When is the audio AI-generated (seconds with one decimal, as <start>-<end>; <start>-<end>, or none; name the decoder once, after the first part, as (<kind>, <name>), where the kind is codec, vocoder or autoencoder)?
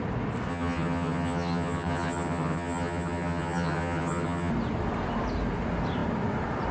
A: 0.5-4.5 (vocoder, HiFi-GAN)